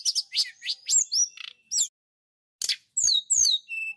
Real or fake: real